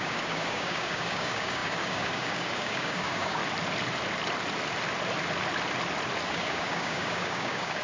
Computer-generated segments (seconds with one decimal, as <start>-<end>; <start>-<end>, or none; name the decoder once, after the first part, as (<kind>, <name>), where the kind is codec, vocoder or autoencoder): 0.0-3.4 (codec, DAC); 6.3-7.8